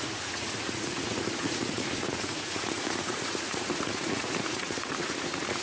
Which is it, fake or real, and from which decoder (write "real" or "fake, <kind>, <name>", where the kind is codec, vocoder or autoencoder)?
fake, vocoder, Vocos